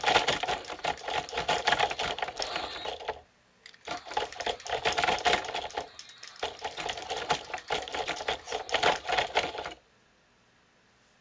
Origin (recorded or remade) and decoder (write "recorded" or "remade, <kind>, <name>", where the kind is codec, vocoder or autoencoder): recorded